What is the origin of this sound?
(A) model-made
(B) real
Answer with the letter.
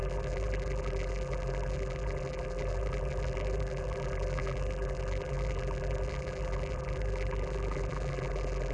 A